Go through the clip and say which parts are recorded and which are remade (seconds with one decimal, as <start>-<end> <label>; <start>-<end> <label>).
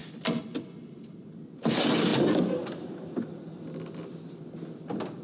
0.0-5.2 recorded